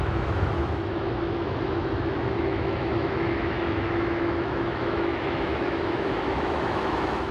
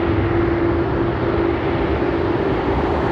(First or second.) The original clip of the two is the second